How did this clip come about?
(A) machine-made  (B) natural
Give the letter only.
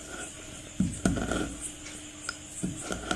B